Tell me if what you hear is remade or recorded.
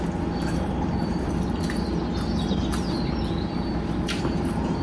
recorded